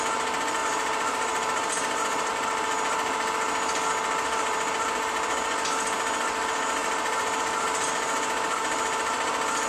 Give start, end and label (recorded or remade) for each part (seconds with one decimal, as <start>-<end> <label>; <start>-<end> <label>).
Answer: 0.0-0.6 recorded; 0.6-2.3 remade; 2.3-6.8 recorded; 6.8-7.4 remade; 7.4-9.7 recorded